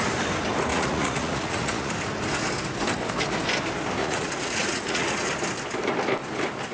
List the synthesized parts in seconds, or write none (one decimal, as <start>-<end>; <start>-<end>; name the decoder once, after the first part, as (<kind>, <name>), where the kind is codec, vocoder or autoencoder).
0.7-1.9 (vocoder, Vocos); 4.0-5.3